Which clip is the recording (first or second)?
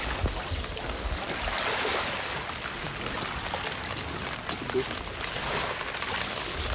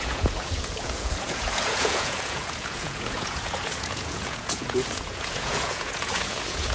first